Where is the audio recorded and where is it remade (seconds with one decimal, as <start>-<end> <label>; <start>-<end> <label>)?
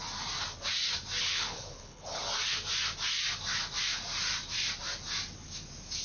0.0-1.2 recorded; 1.2-2.2 remade; 2.2-6.0 recorded